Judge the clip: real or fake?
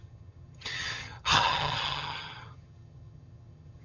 fake